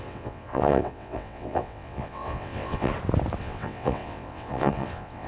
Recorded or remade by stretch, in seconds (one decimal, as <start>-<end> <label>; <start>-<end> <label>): 0.0-2.9 remade; 2.9-3.4 recorded; 3.4-5.3 remade